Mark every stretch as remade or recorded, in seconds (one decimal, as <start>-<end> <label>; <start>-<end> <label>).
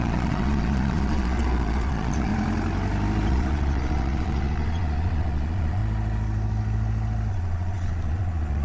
0.0-2.3 remade; 2.3-3.3 recorded; 3.3-5.8 remade; 5.8-7.3 recorded; 7.3-8.6 remade